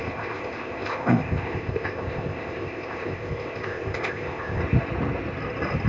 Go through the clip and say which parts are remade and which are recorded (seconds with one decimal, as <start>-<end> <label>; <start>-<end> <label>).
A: 0.0-4.6 remade; 4.6-5.9 recorded

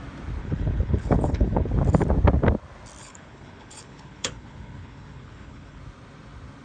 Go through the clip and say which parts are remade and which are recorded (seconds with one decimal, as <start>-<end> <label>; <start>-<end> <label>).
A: 0.0-0.4 recorded; 0.4-1.7 remade; 1.7-3.0 recorded; 3.0-5.8 remade; 5.8-6.6 recorded

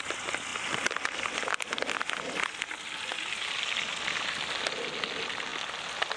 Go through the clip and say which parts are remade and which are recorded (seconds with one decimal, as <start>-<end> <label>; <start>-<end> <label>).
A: 0.0-6.2 recorded

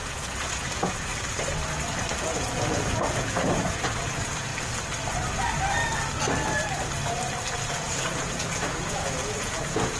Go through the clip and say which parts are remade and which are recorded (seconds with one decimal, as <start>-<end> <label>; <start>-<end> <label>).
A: 0.0-1.1 remade; 1.1-2.2 recorded; 2.2-4.5 remade; 4.5-7.7 recorded; 7.7-10.0 remade